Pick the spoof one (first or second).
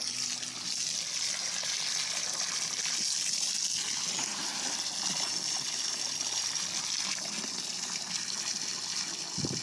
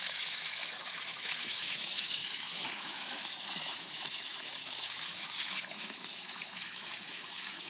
second